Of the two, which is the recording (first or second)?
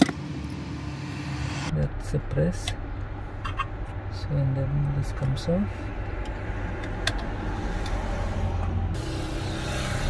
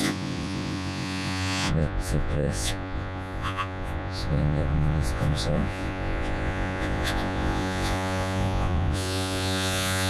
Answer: first